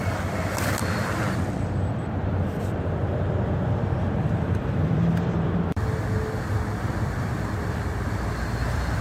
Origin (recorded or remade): remade